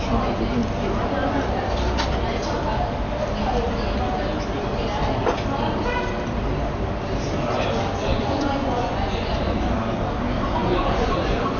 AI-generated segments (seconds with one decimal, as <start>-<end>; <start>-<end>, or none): 8.1-9.4; 10.6-11.6